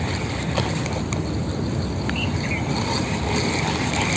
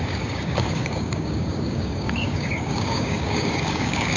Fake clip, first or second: second